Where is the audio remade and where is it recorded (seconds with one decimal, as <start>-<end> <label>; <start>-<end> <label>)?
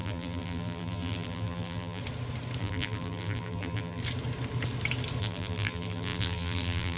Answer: 0.0-2.0 remade; 2.0-2.6 recorded; 2.6-4.0 remade; 4.0-5.2 recorded; 5.2-7.0 remade